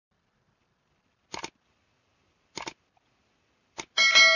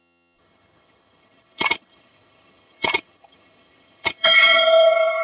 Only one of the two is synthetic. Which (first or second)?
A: second